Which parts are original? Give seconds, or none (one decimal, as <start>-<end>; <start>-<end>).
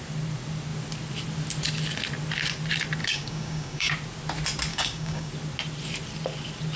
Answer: 0.0-3.0; 3.9-4.7; 5.3-6.8